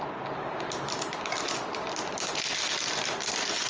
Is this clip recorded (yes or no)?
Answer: yes